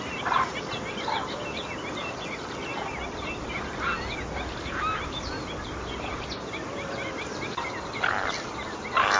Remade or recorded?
recorded